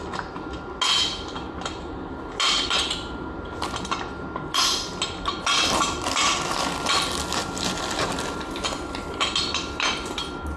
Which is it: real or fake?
real